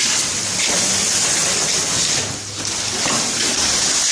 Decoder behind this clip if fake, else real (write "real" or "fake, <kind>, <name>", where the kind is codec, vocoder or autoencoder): real